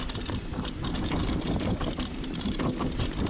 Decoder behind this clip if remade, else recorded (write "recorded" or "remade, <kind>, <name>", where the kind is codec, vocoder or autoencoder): recorded